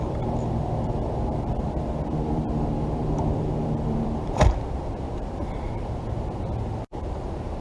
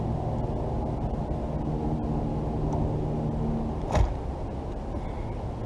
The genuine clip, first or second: second